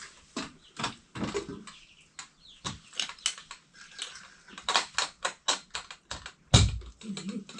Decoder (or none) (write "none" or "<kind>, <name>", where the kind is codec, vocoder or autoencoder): none